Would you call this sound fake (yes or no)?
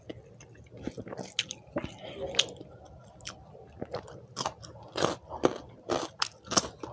no